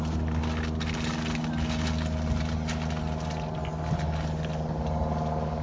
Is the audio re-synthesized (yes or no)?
no